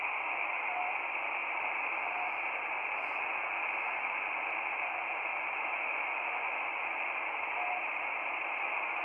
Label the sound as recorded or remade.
recorded